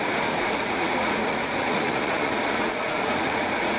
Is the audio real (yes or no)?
no